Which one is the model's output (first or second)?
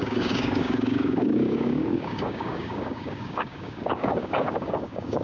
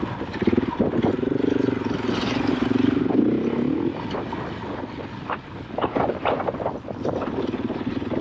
first